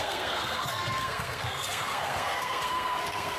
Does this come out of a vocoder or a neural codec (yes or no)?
yes